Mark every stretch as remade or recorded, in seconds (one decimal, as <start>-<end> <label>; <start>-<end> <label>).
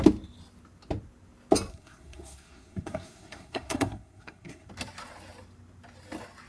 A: 0.0-1.7 recorded; 1.7-4.7 remade; 4.7-6.5 recorded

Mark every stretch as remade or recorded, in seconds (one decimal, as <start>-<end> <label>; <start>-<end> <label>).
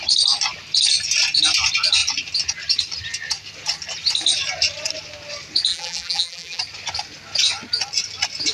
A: 0.0-5.7 recorded; 5.7-6.6 remade; 6.6-8.5 recorded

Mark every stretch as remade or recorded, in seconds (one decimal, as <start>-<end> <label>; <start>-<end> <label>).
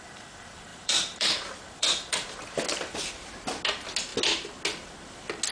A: 0.0-0.7 recorded; 0.7-2.3 remade; 2.3-5.5 recorded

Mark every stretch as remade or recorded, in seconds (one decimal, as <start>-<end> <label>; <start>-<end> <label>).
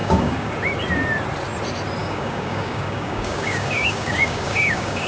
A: 0.0-0.5 remade; 0.5-2.0 recorded; 2.0-5.1 remade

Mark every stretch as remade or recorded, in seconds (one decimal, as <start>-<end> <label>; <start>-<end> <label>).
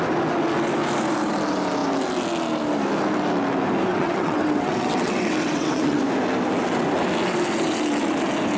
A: 0.0-3.9 recorded; 3.9-6.0 remade; 6.0-8.6 recorded